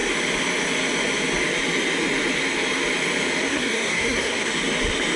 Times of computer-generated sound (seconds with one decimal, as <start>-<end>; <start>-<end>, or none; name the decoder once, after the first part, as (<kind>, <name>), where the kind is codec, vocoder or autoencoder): 3.5-4.5 (codec, SNAC)